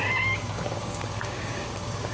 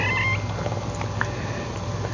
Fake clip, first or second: first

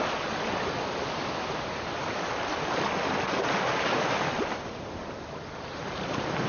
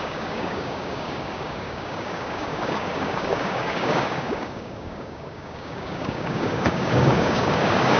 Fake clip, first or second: second